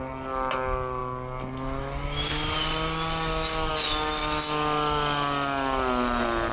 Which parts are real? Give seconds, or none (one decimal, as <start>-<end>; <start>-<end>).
0.0-6.5